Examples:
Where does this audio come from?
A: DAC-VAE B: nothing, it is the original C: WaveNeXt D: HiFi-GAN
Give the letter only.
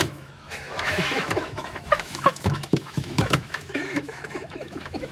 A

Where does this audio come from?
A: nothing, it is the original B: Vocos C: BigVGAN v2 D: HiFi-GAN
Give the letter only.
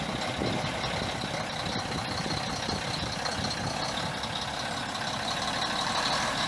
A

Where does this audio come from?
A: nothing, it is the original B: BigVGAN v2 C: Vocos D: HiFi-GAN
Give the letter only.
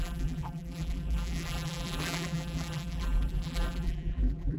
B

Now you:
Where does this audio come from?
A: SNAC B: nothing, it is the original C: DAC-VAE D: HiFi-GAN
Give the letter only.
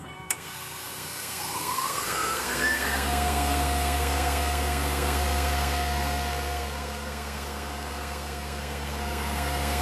A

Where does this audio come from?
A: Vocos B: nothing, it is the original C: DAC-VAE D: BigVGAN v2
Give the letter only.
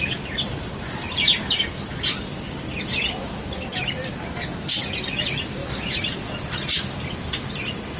D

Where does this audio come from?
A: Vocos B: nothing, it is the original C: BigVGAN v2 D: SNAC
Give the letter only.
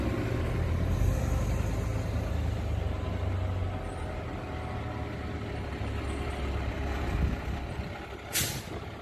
B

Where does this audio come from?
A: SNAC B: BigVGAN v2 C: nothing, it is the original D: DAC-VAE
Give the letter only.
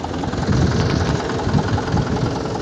C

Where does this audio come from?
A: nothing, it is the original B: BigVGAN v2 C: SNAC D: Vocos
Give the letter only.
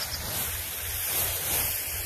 A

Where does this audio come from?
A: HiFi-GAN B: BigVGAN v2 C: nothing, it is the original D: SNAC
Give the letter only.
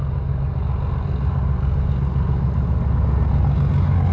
C